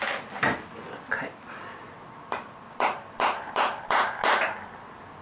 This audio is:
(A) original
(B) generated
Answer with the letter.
A